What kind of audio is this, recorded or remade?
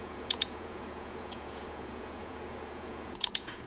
remade